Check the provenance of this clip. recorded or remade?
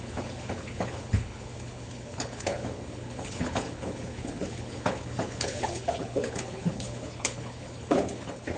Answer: remade